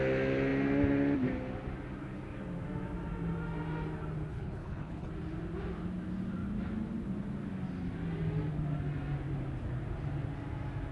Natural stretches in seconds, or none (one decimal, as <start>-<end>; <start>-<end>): 0.0-4.3; 5.1-10.9